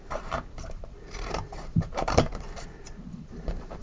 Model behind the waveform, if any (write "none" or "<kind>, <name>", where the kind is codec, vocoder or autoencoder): vocoder, BigVGAN v2